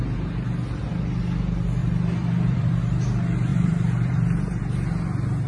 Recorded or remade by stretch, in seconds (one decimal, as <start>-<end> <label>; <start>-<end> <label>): 0.0-1.8 recorded; 1.8-2.8 remade; 2.8-3.5 recorded; 3.5-4.6 remade; 4.6-5.5 recorded